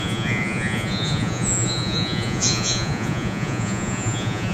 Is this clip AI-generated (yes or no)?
yes